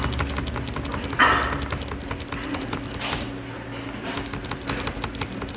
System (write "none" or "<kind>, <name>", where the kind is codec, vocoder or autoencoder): none